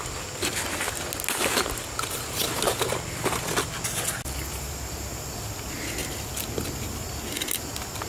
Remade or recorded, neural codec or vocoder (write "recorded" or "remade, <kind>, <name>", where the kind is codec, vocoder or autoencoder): recorded